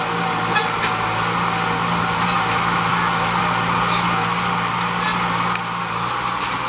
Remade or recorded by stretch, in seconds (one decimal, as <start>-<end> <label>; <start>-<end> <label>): 0.0-6.7 recorded